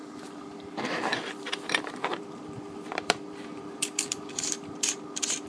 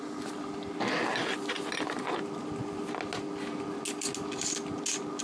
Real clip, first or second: second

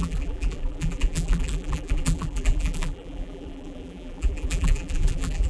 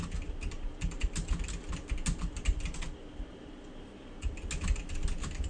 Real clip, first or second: second